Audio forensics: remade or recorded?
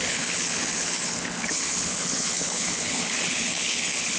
remade